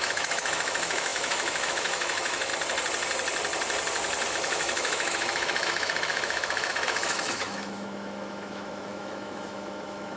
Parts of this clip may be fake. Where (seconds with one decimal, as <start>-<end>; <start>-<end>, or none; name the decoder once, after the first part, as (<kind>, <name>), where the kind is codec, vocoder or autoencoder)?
0.0-2.5 (autoencoder, DAC-VAE); 4.3-10.2